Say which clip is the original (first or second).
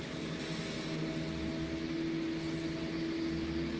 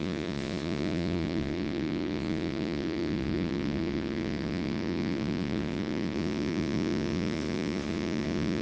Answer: first